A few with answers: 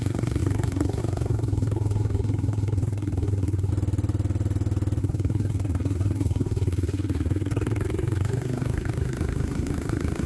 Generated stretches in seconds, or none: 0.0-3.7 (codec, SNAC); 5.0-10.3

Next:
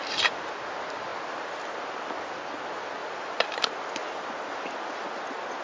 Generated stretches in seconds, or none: 3.0-3.6 (vocoder, BigVGAN v2)

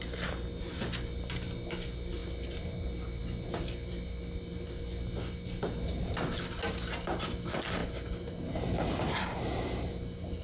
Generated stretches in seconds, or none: none

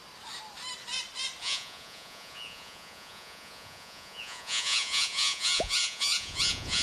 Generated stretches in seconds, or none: 1.4-6.8 (vocoder, Vocos)

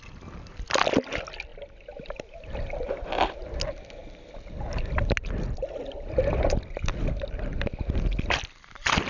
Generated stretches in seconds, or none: none

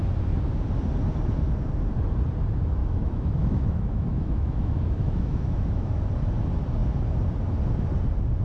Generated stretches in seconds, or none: 2.8-6.0 (autoencoder, DAC-VAE)

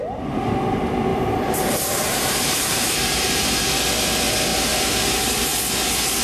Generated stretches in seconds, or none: 1.1-3.7 (vocoder, BigVGAN v2); 4.5-5.5